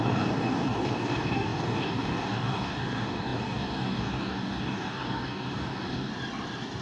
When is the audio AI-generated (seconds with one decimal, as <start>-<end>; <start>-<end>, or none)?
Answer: 0.0-6.1